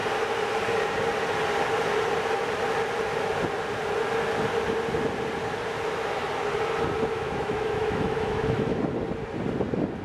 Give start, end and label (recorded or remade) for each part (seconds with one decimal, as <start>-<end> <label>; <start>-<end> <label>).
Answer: 0.0-7.1 recorded; 7.1-8.8 remade; 8.8-10.0 recorded